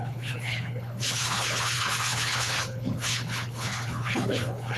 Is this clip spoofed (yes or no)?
yes